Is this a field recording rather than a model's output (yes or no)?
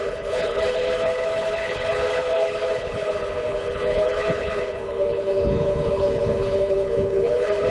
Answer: no